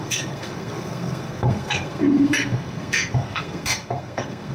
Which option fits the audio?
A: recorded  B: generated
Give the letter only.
B